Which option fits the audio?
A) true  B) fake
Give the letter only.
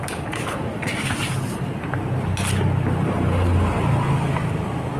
A